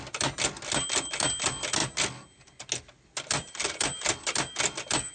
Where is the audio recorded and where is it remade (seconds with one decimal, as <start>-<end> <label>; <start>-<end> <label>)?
0.0-5.1 recorded